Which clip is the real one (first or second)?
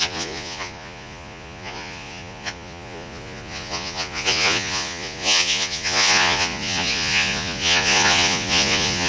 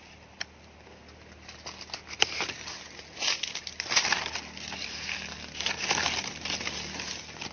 second